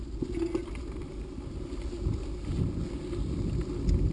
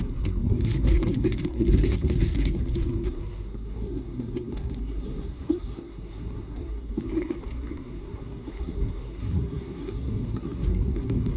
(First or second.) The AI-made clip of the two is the second